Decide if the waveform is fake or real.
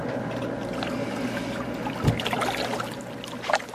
real